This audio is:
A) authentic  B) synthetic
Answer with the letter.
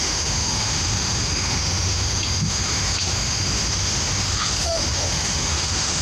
B